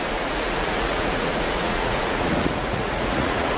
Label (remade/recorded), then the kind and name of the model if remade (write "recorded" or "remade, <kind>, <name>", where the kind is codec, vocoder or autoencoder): remade, vocoder, Vocos